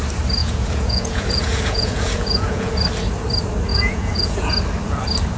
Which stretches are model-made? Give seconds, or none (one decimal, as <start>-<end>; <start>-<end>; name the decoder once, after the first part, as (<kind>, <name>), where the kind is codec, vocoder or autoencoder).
0.4-2.7 (vocoder, Vocos); 3.7-4.5